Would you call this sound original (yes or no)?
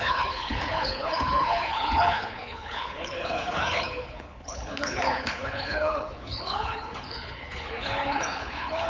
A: no